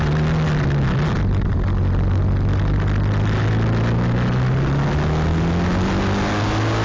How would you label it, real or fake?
real